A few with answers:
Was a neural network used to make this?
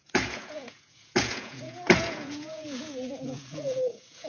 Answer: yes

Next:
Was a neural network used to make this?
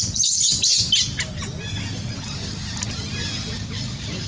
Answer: no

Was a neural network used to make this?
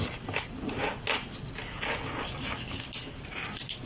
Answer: no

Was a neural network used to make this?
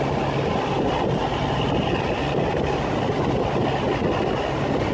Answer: no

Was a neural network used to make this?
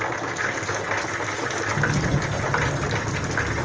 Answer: no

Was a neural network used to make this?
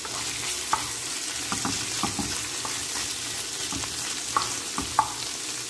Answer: no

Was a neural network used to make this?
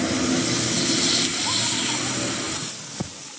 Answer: no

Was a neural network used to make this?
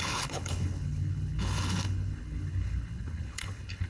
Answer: yes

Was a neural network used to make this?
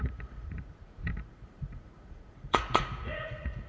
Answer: yes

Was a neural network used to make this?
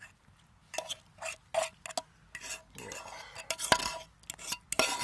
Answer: no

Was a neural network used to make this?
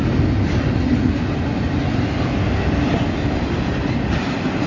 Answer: no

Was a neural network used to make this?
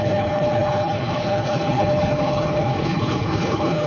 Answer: yes